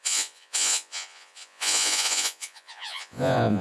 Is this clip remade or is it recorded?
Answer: remade